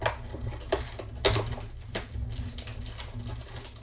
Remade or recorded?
recorded